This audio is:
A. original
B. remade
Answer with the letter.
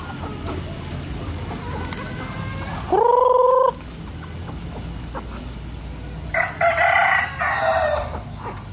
A